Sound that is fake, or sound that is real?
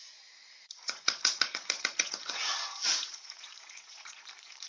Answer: fake